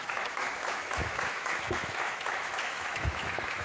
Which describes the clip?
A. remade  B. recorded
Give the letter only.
A